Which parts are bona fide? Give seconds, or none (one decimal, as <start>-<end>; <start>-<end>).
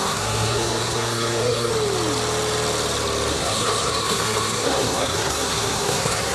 1.7-3.3